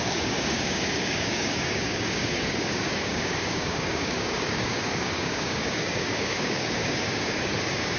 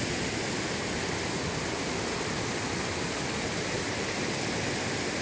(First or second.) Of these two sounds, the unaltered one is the second